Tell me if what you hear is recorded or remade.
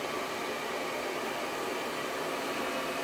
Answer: recorded